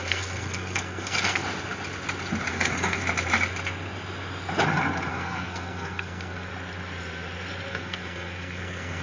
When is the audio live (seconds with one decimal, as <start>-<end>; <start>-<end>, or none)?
1.4-2.5; 3.0-5.1; 6.5-7.7